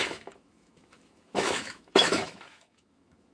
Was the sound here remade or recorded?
remade